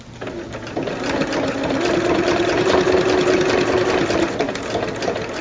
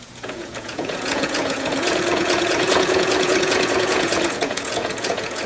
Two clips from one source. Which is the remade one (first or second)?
second